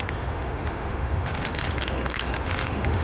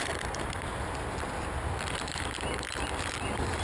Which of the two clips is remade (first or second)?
first